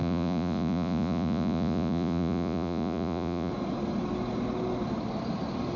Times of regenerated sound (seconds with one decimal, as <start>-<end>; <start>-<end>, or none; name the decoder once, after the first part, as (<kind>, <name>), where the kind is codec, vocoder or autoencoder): 0.0-3.5 (vocoder, Vocos)